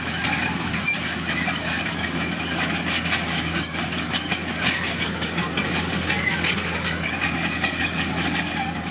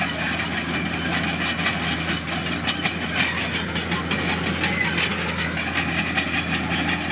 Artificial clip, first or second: first